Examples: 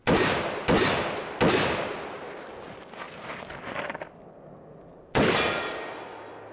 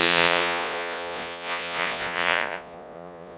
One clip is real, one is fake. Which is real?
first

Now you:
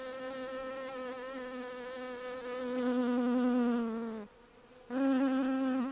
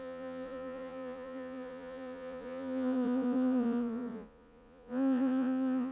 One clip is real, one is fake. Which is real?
first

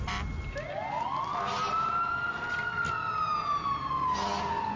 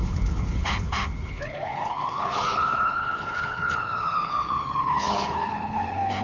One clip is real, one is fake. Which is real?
first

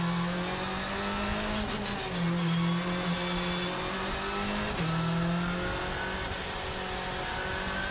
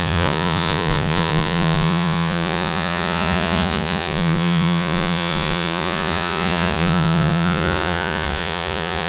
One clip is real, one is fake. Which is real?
first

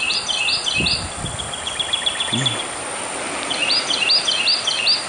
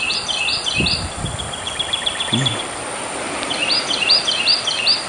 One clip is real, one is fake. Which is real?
first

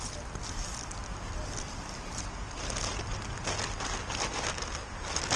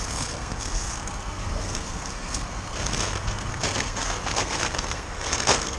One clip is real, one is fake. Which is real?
first